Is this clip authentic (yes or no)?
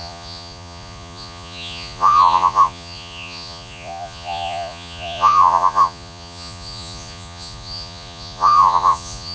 no